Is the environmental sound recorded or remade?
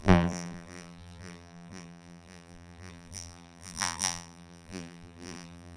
remade